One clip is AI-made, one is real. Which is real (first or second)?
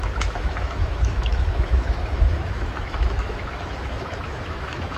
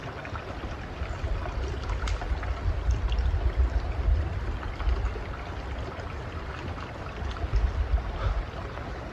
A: second